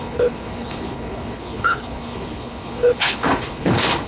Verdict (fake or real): fake